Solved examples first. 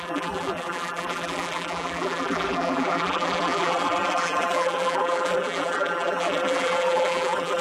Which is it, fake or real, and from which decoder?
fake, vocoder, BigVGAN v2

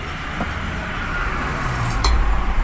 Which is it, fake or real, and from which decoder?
fake, vocoder, BigVGAN v2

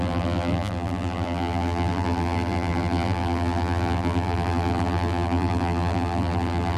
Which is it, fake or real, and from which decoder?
fake, vocoder, BigVGAN v2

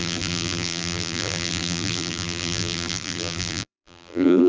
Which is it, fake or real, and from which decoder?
fake, vocoder, BigVGAN v2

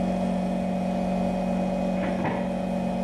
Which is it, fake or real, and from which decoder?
real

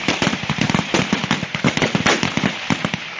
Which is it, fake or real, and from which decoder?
real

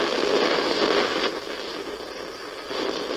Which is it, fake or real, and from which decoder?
real